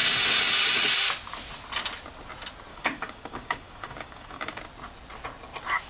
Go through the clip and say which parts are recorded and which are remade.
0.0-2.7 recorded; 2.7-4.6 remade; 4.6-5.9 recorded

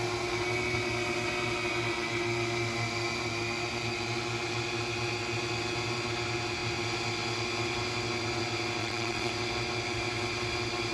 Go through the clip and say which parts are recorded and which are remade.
0.0-8.8 recorded; 8.8-9.3 remade; 9.3-10.9 recorded

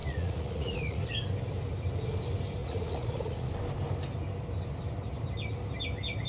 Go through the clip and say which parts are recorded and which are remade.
0.0-1.1 remade; 1.1-2.6 recorded; 2.6-3.5 remade; 3.5-6.3 recorded

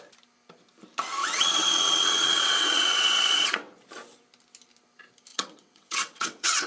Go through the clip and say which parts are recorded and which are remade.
0.0-1.2 recorded; 1.2-3.7 remade; 3.7-5.3 recorded; 5.3-6.7 remade